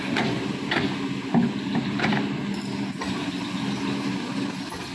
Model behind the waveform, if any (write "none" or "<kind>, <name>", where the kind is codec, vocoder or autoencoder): none